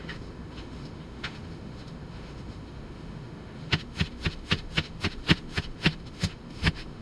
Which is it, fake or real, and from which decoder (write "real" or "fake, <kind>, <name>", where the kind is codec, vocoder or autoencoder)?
fake, autoencoder, DAC-VAE